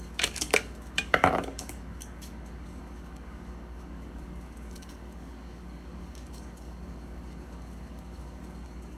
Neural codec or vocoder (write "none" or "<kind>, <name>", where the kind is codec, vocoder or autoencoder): codec, DAC